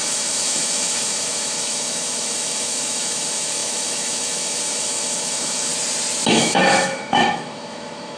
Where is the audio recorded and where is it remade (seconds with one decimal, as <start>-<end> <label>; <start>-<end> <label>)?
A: 0.0-5.7 remade; 5.7-6.3 recorded; 6.3-8.2 remade

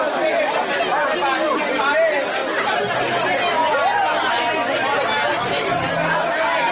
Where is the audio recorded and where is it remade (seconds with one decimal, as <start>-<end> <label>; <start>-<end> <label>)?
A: 0.0-6.7 recorded

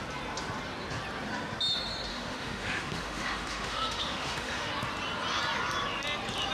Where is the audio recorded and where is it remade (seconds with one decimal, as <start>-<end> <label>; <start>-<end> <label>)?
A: 0.0-2.1 recorded; 2.1-4.7 remade; 4.7-6.5 recorded

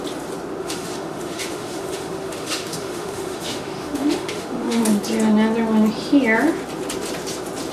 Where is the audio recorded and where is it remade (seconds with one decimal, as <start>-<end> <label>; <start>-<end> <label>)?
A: 0.0-0.6 recorded; 0.6-4.8 remade; 4.8-7.7 recorded

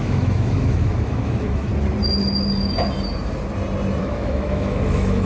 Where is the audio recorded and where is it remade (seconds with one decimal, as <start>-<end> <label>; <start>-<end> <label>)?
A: 0.0-1.7 remade; 1.7-4.0 recorded; 4.0-5.3 remade